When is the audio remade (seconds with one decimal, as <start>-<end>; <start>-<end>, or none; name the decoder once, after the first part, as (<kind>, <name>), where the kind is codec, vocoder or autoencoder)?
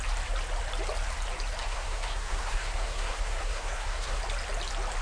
1.6-4.2 (codec, SNAC)